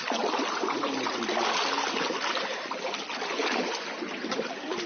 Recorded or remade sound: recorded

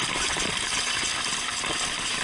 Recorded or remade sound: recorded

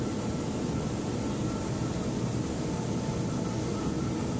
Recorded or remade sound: recorded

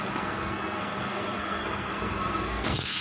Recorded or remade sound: remade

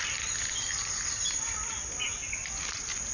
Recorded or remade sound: recorded